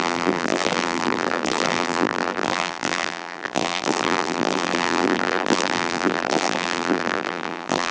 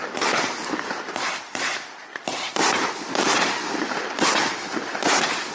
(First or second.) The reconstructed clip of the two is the first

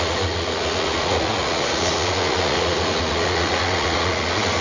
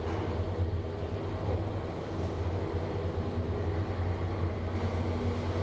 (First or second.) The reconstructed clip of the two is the first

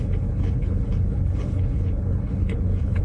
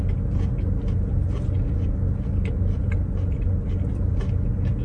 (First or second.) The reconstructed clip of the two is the first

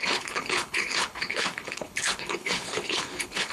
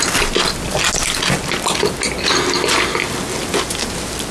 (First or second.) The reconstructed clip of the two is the first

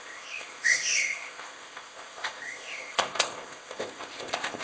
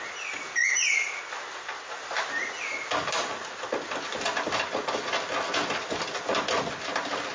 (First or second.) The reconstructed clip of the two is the first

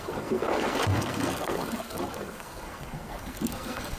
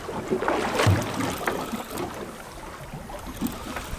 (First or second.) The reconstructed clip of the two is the first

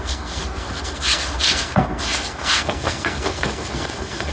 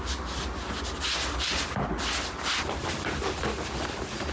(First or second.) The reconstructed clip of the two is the first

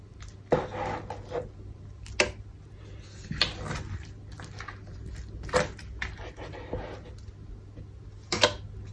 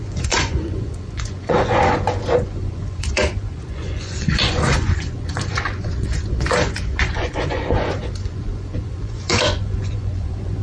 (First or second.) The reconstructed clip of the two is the second